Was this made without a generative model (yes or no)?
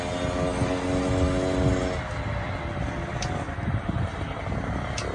yes